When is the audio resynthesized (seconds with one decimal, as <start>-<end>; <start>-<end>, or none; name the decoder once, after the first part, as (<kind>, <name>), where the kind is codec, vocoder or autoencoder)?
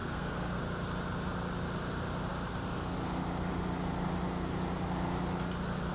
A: 0.0-0.6 (codec, SNAC)